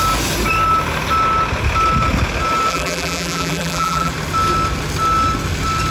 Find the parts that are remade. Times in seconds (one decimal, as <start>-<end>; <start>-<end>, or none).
2.7-4.1